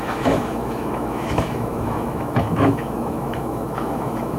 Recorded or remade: remade